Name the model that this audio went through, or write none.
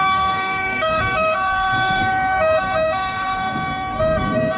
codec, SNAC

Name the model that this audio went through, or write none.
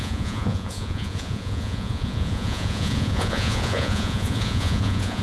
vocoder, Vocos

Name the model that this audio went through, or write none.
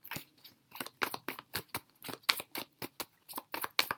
none